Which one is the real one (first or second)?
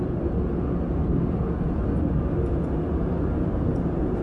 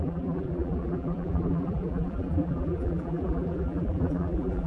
first